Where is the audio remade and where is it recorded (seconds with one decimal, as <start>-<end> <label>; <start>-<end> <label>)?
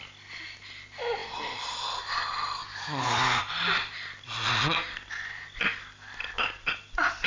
0.0-2.6 recorded; 2.6-3.4 remade; 3.4-7.3 recorded